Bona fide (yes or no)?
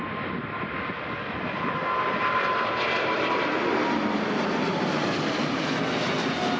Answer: yes